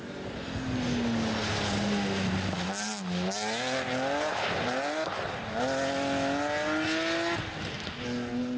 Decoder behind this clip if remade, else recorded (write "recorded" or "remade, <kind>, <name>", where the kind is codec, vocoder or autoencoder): recorded